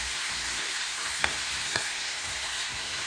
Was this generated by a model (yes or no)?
yes